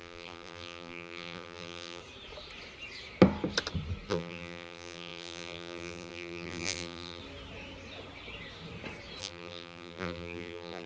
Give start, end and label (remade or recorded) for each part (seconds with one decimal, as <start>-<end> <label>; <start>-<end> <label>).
0.0-2.0 remade; 2.0-4.1 recorded; 4.1-7.2 remade; 7.2-9.2 recorded; 9.2-10.9 remade